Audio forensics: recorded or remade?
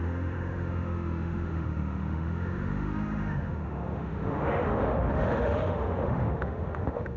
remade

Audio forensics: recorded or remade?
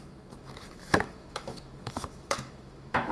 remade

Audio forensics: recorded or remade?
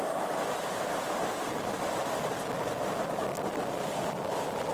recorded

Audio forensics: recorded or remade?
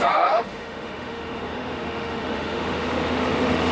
remade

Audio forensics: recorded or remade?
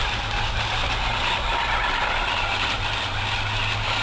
recorded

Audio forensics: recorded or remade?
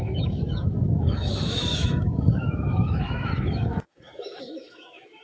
remade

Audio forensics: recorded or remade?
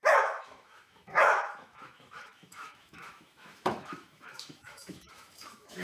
remade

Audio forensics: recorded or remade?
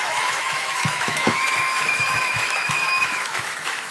remade